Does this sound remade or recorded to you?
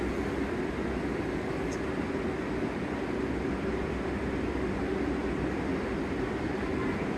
recorded